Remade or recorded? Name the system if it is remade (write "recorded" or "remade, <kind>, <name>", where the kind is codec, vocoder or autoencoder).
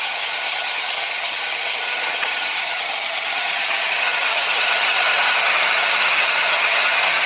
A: remade, vocoder, HiFi-GAN